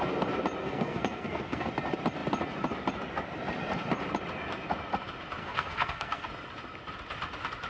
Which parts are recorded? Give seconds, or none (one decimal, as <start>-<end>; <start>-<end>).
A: 0.0-0.6; 1.7-5.4; 6.3-7.7